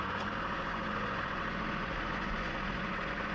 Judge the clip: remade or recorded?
remade